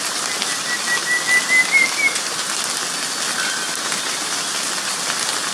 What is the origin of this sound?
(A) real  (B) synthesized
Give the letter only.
A